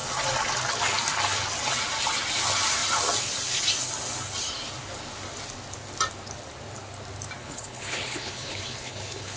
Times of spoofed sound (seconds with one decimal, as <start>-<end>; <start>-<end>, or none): 7.4-9.4